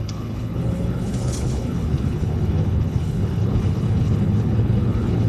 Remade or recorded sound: remade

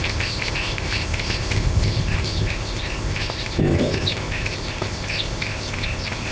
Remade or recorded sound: remade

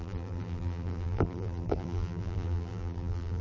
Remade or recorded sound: remade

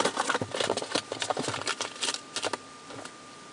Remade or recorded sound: recorded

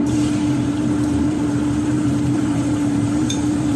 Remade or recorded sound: remade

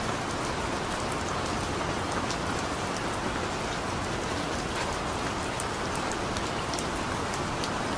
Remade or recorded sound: recorded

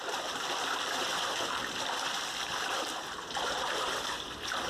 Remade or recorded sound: remade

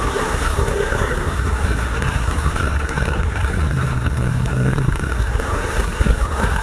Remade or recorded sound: remade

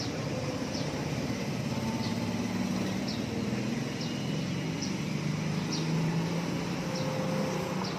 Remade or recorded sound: recorded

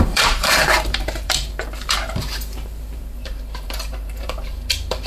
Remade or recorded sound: remade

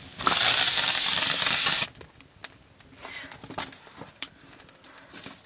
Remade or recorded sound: recorded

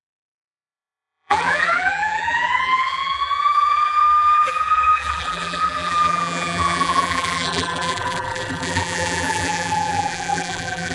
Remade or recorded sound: remade